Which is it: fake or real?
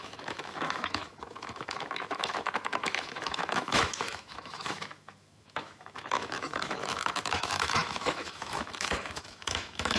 fake